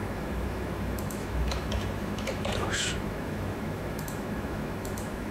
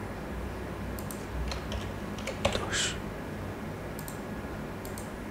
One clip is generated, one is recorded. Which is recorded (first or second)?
second